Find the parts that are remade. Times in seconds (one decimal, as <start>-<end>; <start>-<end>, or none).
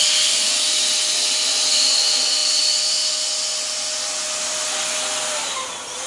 none